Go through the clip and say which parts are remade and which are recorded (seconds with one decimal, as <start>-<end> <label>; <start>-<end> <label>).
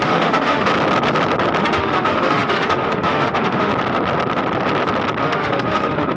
0.0-0.7 remade; 0.7-1.6 recorded; 1.6-3.7 remade; 3.7-5.2 recorded; 5.2-6.2 remade